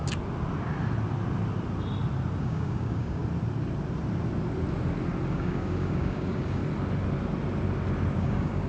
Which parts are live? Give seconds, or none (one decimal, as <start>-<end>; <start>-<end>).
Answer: 0.0-2.4; 3.2-5.3; 6.6-8.2

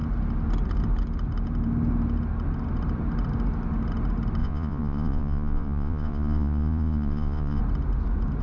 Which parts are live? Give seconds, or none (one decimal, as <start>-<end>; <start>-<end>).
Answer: 0.0-4.4; 7.6-8.4

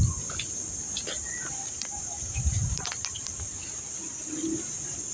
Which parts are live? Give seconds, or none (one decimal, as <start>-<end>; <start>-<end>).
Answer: 0.0-5.1

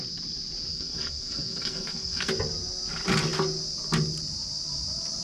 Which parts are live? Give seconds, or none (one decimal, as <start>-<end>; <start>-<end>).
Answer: 0.0-0.7; 2.3-5.2

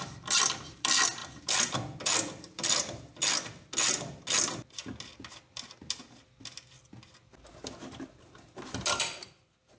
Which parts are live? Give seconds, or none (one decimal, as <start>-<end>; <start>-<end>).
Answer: 3.1-7.5

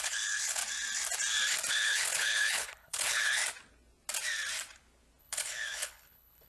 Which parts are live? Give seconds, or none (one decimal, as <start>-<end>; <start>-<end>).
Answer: 0.6-1.7; 3.4-5.2

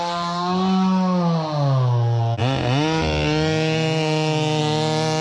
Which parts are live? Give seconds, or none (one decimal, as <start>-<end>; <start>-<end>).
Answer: 0.0-5.2